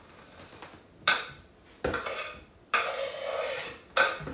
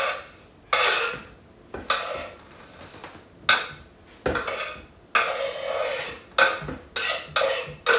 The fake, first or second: first